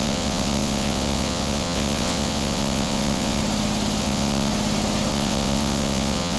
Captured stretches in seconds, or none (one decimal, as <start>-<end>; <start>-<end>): 3.4-4.0; 4.5-5.1